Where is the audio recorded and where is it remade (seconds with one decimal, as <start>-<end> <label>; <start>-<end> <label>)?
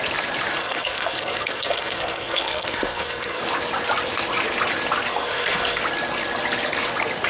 0.0-0.6 recorded; 0.6-3.4 remade; 3.4-5.1 recorded; 5.1-5.8 remade; 5.8-7.3 recorded